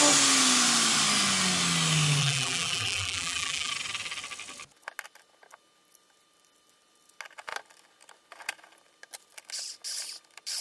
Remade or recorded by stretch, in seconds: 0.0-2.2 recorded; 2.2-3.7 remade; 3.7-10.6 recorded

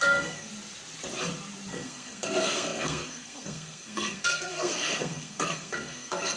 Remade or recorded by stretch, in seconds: 0.0-0.5 remade; 0.5-1.7 recorded; 1.7-6.4 remade

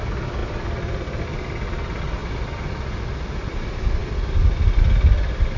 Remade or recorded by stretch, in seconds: 0.0-5.6 recorded